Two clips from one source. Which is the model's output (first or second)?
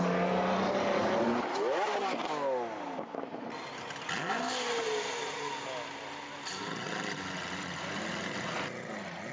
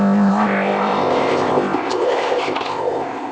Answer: second